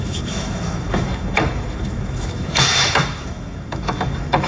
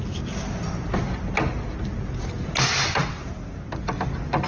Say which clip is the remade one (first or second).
first